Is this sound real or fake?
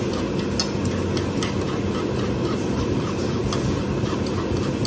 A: real